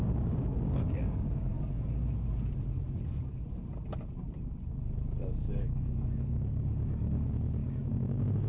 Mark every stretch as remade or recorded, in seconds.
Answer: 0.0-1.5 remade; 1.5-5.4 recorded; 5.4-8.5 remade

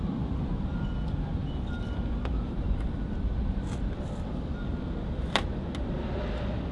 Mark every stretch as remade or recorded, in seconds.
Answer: 0.0-0.7 recorded; 0.7-4.7 remade; 4.7-6.7 recorded

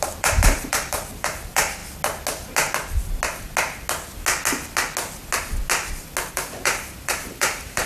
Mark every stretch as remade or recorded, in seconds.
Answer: 0.0-1.8 remade; 1.8-6.3 recorded; 6.3-7.9 remade

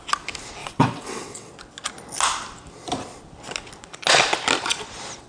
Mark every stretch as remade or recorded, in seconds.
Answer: 0.0-0.6 recorded; 0.6-1.5 remade; 1.5-5.3 recorded

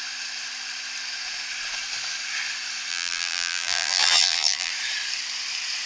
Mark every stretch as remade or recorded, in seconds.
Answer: 0.0-2.9 recorded; 2.9-4.7 remade; 4.7-5.9 recorded